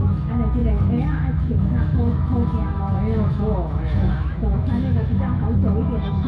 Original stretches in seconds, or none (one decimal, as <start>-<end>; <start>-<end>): none